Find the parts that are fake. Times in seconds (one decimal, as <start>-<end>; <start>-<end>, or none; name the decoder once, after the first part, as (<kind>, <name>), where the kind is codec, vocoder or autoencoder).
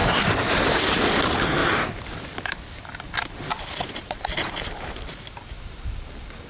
0.0-1.0 (vocoder, BigVGAN v2); 1.6-2.3; 3.5-6.5